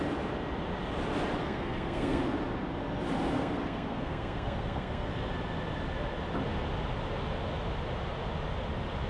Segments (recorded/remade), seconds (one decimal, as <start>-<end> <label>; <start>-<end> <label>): 0.0-1.4 recorded; 1.4-2.2 remade; 2.2-3.3 recorded; 3.3-5.1 remade; 5.1-9.1 recorded